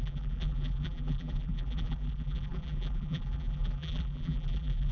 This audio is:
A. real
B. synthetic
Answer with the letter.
B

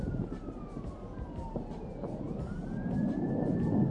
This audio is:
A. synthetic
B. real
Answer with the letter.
A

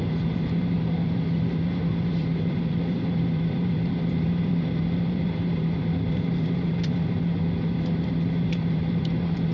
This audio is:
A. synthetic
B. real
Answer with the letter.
A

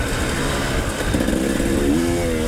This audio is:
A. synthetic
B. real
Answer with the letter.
B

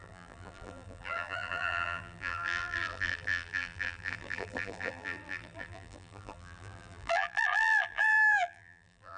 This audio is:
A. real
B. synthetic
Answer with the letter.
B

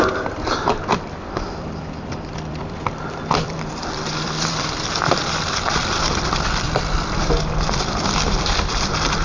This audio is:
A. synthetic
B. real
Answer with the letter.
A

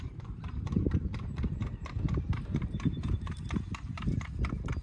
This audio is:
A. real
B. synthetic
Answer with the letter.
B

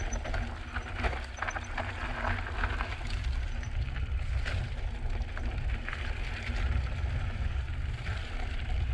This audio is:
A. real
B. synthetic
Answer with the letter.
A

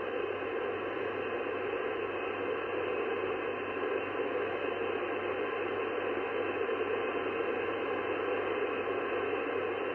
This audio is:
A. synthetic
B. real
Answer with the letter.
B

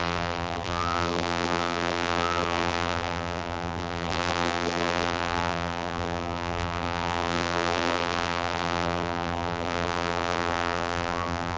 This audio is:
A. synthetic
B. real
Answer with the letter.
A